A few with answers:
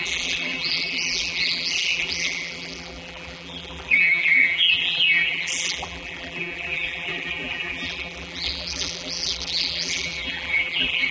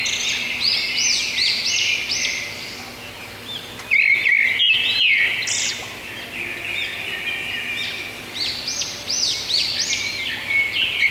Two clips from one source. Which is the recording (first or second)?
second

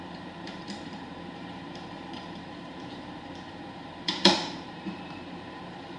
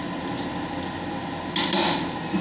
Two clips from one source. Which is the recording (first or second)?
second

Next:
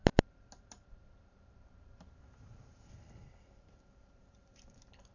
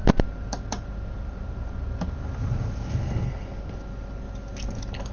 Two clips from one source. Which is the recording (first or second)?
second